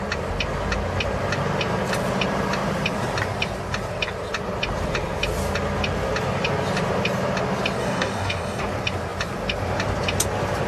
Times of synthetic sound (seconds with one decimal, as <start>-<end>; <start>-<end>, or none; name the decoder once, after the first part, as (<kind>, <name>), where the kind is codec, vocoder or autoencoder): 7.8-8.6 (codec, DAC)

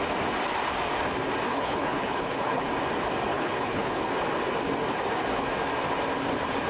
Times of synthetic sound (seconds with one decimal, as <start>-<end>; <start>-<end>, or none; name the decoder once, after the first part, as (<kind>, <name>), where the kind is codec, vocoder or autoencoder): 1.5-2.7 (codec, HILCodec); 3.3-3.9